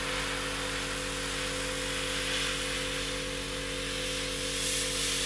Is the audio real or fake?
real